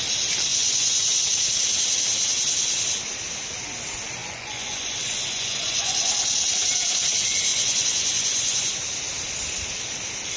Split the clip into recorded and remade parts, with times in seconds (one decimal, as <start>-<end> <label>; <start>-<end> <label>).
0.0-0.5 recorded; 0.5-1.2 remade; 1.2-4.2 recorded; 4.2-6.1 remade; 6.1-7.5 recorded; 7.5-8.7 remade; 8.7-10.4 recorded